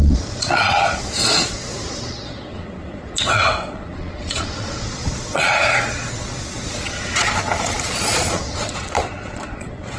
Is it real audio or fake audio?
fake